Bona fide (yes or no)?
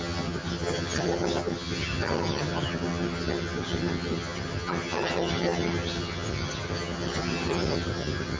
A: no